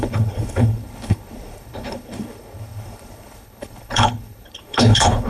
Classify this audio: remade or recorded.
remade